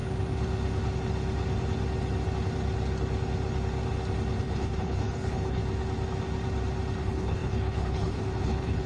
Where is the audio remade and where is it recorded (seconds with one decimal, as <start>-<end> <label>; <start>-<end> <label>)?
0.0-4.4 recorded; 4.4-5.6 remade; 5.6-7.0 recorded; 7.0-8.9 remade